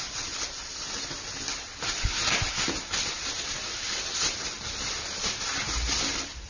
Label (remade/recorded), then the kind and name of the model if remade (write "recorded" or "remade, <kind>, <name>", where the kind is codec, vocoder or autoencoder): recorded